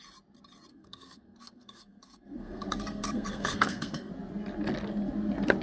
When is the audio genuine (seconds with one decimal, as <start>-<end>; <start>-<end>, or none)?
0.0-0.7; 4.1-5.6

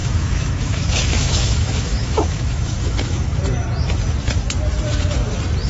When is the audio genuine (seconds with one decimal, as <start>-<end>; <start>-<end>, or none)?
3.4-5.7

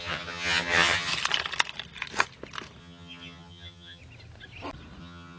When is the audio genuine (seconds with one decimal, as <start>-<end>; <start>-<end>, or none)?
1.1-2.8; 4.0-5.0

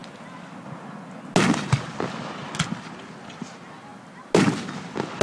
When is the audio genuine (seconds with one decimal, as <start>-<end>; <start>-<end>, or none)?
0.0-5.2